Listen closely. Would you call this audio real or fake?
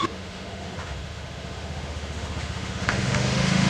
fake